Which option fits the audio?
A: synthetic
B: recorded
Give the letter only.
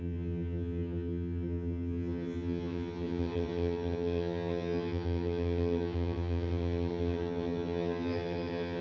A